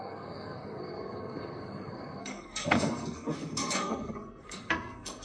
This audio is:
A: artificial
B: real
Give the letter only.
A